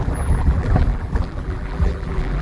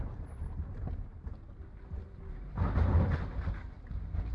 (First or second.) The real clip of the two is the second